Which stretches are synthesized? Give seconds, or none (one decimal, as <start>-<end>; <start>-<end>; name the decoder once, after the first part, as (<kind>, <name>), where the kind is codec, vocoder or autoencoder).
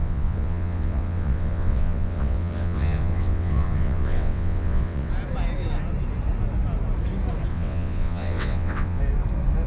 0.0-5.1 (vocoder, WaveNeXt); 7.5-9.0